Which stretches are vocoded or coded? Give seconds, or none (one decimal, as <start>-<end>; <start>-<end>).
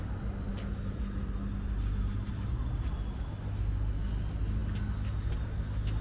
none